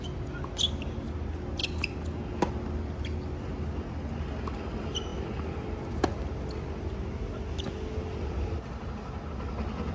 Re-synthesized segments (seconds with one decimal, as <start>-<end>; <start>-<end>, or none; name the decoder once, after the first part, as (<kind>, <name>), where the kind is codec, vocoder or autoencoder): none